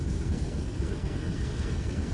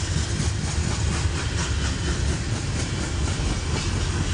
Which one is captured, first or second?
second